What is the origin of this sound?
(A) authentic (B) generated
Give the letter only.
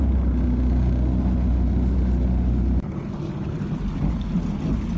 A